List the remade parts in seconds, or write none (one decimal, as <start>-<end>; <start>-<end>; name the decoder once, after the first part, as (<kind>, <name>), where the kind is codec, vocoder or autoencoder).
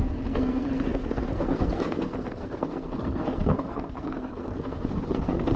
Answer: 0.0-5.6 (codec, SNAC)